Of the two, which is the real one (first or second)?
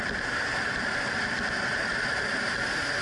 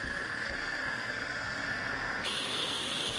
first